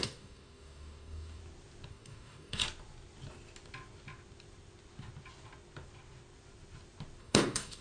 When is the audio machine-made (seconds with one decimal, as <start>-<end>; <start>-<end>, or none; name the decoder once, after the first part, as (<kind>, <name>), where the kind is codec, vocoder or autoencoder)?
0.0-1.4 (codec, DAC); 1.9-2.6; 7.2-7.8